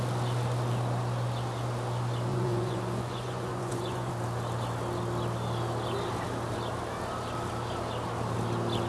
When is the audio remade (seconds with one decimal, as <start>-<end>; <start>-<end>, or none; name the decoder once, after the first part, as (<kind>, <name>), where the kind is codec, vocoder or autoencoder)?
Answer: 2.3-4.1 (vocoder, Vocos)